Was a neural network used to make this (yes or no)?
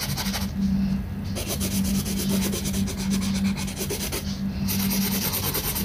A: no